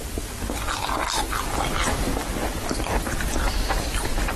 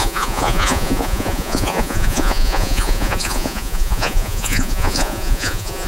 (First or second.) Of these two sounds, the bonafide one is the first